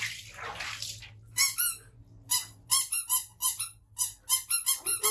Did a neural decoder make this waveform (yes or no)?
no